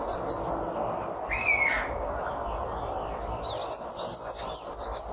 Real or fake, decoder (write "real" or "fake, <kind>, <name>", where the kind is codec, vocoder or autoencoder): real